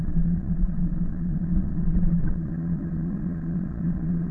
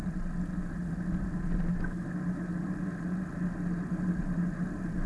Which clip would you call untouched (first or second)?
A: second